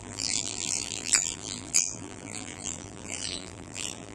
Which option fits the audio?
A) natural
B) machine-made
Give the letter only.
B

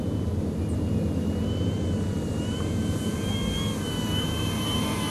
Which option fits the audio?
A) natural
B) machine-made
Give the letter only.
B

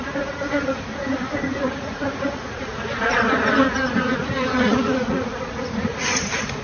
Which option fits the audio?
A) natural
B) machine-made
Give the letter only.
B